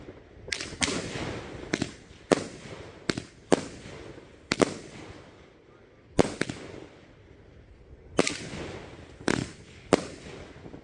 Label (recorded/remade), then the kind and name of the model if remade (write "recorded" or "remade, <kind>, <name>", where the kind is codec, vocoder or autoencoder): recorded